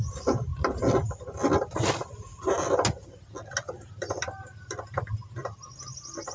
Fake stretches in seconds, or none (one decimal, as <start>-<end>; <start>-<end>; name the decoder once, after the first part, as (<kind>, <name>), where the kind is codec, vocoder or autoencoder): none